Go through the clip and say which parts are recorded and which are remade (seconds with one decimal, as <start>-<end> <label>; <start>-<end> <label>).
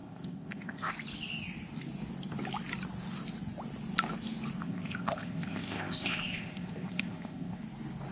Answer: 0.0-0.9 remade; 0.9-4.6 recorded; 4.6-7.6 remade; 7.6-8.1 recorded